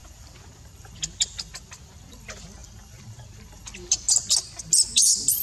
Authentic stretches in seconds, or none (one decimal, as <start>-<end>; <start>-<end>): none